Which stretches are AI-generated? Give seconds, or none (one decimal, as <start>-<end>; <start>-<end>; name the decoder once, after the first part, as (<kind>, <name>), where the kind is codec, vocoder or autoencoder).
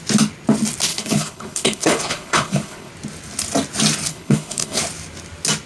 0.9-2.9 (codec, HILCodec); 4.1-4.8